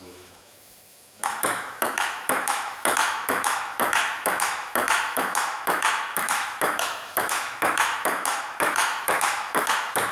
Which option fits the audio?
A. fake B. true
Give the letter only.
A